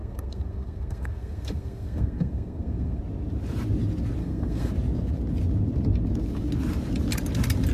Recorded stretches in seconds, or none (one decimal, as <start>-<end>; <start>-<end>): 3.0-4.2; 4.7-7.7